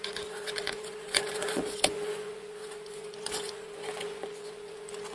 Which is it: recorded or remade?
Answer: remade